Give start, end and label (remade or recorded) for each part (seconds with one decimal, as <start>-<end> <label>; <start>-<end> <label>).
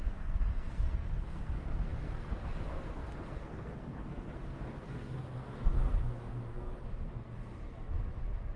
0.0-8.6 remade